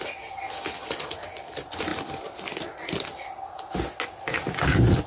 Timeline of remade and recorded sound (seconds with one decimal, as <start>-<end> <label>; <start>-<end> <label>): 0.0-5.1 recorded